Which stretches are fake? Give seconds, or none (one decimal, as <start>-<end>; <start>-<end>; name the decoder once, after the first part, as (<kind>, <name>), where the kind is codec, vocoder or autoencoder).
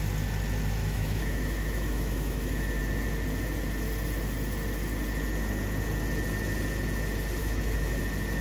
0.8-2.8 (autoencoder, DAC-VAE); 7.4-8.0